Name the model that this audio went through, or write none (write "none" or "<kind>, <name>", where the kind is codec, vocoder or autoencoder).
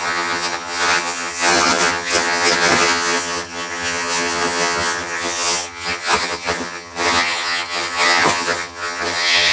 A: vocoder, HiFi-GAN